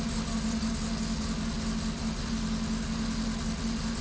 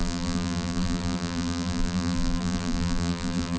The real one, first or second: first